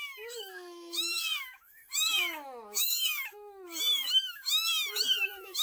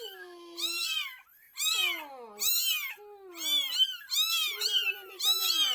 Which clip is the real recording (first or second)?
second